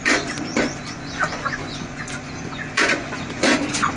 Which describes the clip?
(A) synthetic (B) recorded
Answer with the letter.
A